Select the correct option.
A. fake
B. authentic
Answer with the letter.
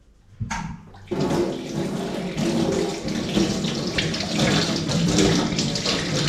A